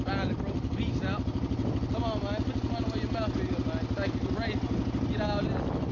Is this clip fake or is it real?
real